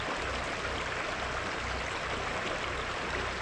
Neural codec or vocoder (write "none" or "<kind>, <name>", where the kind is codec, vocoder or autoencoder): none